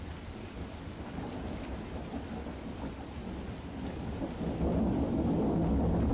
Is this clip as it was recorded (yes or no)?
yes